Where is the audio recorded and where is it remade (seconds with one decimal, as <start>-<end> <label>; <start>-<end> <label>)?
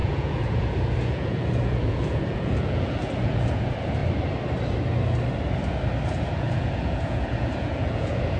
0.0-4.0 remade; 4.0-6.2 recorded; 6.2-8.4 remade